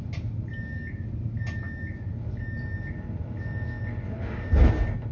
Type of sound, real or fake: real